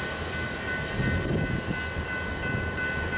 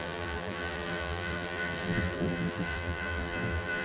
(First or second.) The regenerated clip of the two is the second